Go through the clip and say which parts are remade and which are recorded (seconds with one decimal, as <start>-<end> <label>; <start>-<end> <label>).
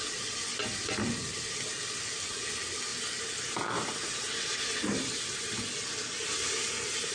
0.0-7.1 recorded